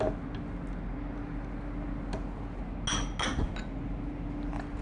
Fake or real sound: real